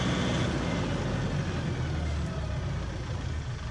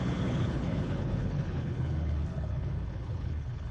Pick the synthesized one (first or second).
second